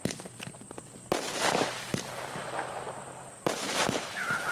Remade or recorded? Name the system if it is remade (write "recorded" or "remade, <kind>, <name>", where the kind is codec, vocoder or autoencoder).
recorded